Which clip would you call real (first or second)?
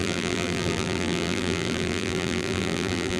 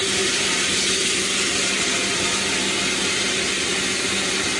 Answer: second